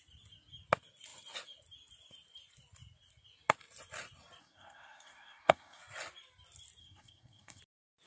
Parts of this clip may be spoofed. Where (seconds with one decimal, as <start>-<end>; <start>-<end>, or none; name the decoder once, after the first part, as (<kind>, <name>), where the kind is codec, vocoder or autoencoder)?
4.4-5.8 (codec, SNAC); 6.8-7.6